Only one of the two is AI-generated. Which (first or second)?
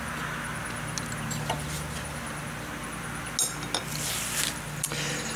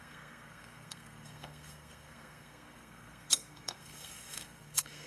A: second